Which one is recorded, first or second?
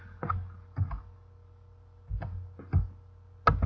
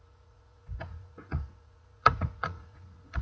first